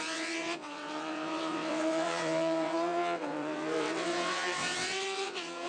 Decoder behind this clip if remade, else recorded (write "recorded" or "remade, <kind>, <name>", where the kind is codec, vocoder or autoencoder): remade, vocoder, WaveNeXt